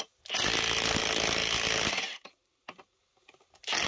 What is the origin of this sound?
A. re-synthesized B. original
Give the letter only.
B